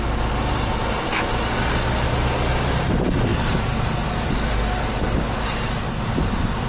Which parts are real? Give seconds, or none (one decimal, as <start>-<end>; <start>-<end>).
0.0-6.7